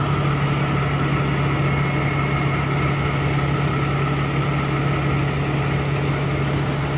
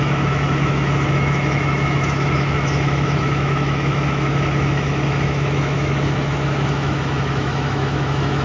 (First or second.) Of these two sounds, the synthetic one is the second